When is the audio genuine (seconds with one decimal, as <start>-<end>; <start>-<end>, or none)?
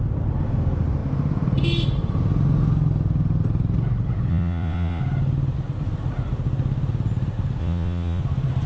0.0-4.3; 5.0-7.6; 8.2-8.7